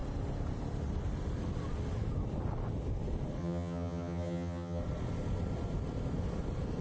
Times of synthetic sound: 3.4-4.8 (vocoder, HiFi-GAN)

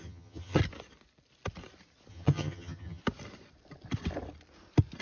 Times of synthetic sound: 0.0-0.6 (vocoder, HiFi-GAN); 2.1-3.0

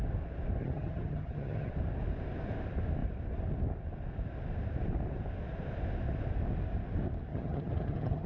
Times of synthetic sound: 0.6-1.7 (vocoder, HiFi-GAN); 7.3-8.3

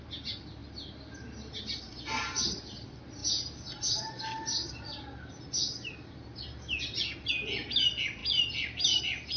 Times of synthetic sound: none

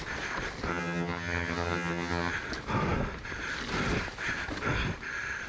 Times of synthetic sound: 0.7-2.3 (vocoder, HiFi-GAN)

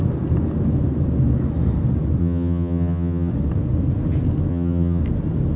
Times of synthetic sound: 2.2-3.3 (vocoder, HiFi-GAN); 4.5-5.0

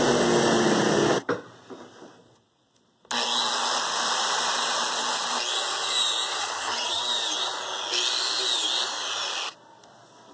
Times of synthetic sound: 6.4-7.0 (vocoder, HiFi-GAN)